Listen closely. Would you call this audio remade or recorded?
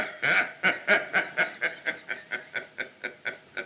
recorded